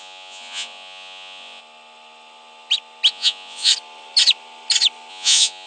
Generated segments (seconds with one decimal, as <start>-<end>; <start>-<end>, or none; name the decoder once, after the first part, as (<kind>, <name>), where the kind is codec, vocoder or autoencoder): 0.0-1.6 (vocoder, Vocos); 3.1-3.7; 5.1-5.7